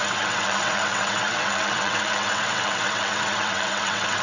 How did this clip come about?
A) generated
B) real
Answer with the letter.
A